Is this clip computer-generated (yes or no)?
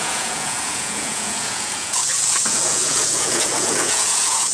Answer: yes